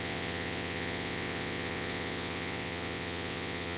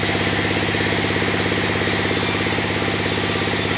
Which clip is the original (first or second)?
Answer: second